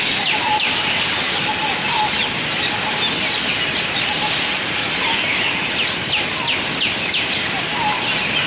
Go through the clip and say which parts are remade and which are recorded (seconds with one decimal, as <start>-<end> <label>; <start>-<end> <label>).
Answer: 0.0-8.5 recorded